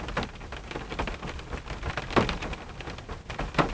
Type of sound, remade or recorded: recorded